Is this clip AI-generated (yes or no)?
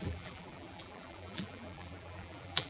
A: yes